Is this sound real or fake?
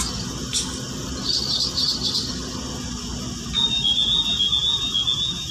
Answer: real